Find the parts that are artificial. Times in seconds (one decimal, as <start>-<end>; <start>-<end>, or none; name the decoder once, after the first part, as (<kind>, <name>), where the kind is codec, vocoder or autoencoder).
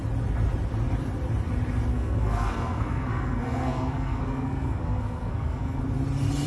1.9-5.8 (codec, SNAC)